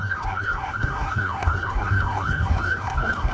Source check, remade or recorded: remade